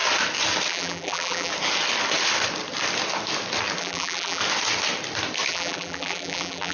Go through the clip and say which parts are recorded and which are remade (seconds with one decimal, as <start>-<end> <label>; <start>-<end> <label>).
0.0-0.7 recorded; 0.7-1.5 remade; 1.5-3.8 recorded; 3.8-4.4 remade; 4.4-5.5 recorded; 5.5-6.7 remade